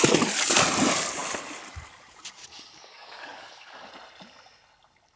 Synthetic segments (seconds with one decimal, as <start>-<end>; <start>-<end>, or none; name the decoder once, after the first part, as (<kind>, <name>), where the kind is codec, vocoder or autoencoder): 2.4-3.9 (codec, DAC)